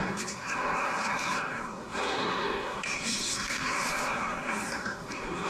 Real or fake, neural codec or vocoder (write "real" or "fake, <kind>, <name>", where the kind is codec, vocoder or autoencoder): fake, codec, SNAC